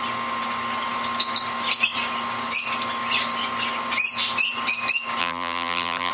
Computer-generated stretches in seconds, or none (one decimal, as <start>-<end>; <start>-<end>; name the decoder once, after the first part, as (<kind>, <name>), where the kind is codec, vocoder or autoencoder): 5.2-6.1 (vocoder, BigVGAN v2)